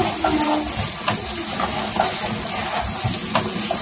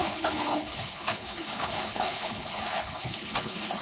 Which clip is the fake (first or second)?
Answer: second